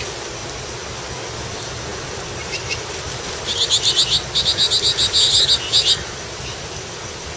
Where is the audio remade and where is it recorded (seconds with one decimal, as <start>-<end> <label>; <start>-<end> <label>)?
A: 0.0-7.4 recorded